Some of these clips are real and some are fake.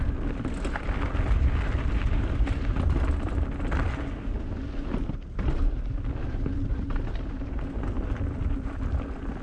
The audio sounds real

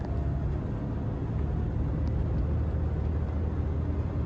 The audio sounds real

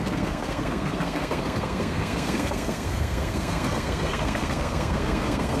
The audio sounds fake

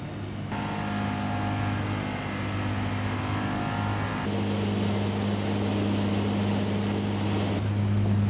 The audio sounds real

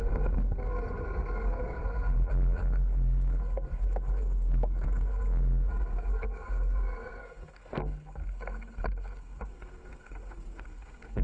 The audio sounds fake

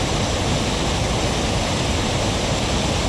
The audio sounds real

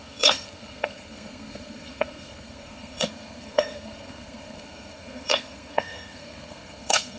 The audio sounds fake